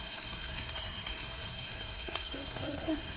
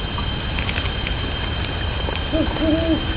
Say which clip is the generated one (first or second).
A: first